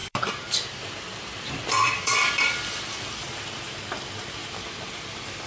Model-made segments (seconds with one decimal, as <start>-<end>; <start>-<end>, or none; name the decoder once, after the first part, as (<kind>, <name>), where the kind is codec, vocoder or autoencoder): 0.0-3.3 (vocoder, BigVGAN v2)